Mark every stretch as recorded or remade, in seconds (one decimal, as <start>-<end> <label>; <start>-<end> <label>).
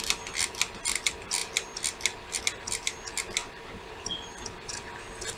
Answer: 0.0-3.4 recorded; 3.4-4.7 remade; 4.7-5.4 recorded